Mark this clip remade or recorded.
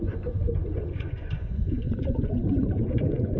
remade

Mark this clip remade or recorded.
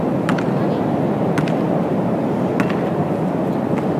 recorded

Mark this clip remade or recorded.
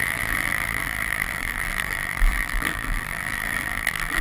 remade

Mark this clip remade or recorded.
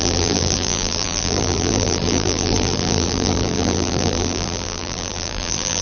remade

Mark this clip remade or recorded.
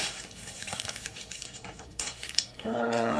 remade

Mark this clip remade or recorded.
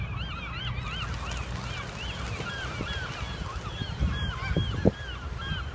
recorded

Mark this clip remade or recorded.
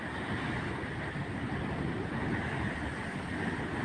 recorded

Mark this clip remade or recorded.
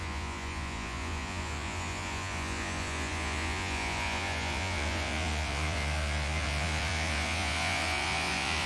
remade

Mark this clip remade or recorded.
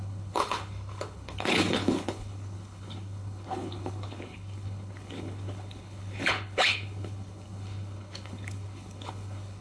remade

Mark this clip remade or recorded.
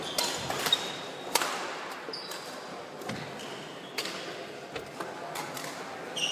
recorded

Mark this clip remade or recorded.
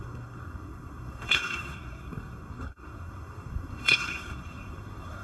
remade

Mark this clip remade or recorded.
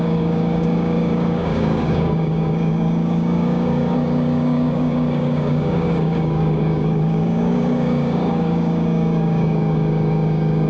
remade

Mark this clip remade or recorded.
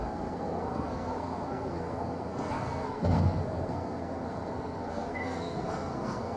remade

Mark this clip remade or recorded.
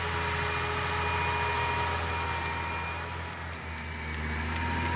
recorded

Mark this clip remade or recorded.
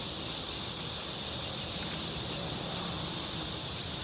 remade